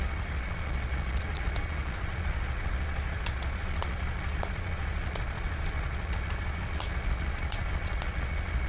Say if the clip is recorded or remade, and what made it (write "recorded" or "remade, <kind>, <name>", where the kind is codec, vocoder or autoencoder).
remade, vocoder, Vocos